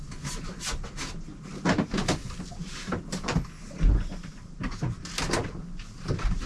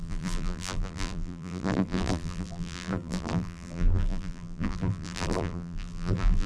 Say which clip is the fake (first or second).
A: second